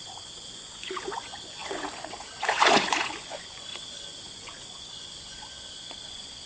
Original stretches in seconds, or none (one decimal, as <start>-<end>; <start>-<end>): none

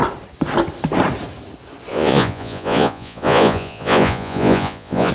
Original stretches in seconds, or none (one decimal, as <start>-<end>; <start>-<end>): 0.0-1.9

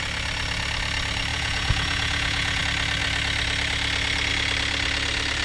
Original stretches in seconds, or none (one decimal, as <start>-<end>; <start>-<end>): 0.0-1.3; 2.6-5.4

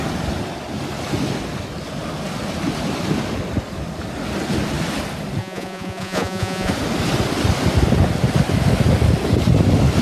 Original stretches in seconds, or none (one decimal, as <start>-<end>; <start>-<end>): 0.0-5.4; 6.7-10.0

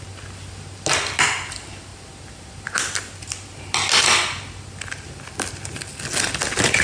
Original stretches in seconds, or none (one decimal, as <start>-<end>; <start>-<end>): 0.0-6.8

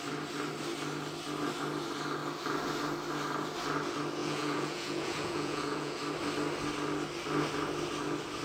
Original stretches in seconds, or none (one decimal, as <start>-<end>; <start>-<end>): 0.0-4.2; 6.0-8.4

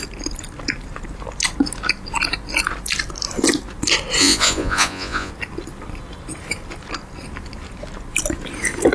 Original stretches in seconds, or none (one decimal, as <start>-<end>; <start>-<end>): 0.0-4.2; 5.3-8.9